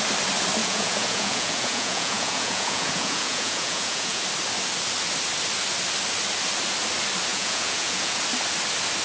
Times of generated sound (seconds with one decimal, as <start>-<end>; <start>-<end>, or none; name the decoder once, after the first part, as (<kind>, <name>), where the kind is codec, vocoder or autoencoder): 0.6-4.2 (vocoder, Vocos); 7.3-8.2